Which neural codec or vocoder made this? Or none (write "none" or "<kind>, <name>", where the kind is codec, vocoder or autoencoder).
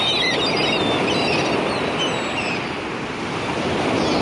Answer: none